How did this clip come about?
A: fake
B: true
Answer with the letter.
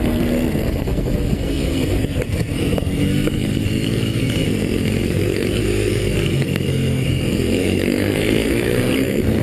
A